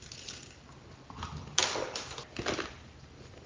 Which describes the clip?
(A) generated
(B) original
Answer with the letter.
B